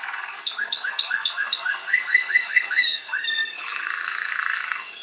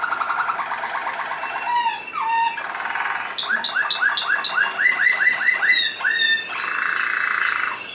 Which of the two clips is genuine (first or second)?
second